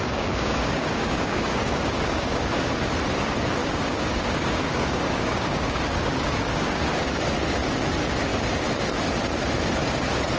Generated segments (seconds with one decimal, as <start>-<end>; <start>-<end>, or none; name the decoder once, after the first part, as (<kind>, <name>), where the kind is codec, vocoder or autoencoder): 0.0-2.7 (codec, DAC); 3.6-7.2